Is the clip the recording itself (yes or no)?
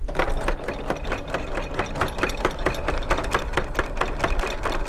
yes